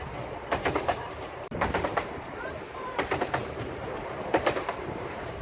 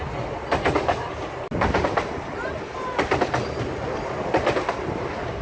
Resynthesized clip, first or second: first